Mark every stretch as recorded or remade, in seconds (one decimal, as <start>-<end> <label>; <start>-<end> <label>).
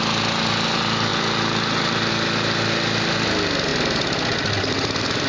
0.0-5.3 recorded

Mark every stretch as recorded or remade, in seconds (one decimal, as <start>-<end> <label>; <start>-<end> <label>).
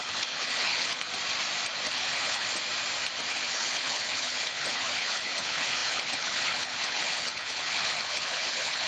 0.0-1.1 remade; 1.1-1.9 recorded; 1.9-2.5 remade; 2.5-3.3 recorded; 3.3-8.9 remade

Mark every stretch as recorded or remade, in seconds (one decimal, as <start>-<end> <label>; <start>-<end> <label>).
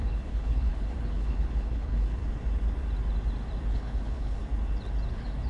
0.0-2.2 remade; 2.2-3.7 recorded; 3.7-4.4 remade; 4.4-5.1 recorded; 5.1-5.5 remade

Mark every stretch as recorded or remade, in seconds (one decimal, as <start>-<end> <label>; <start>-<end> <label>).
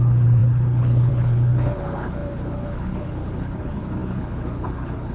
0.0-5.1 remade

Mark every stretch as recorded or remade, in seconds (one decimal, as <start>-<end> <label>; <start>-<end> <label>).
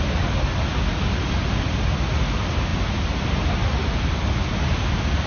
0.0-5.3 recorded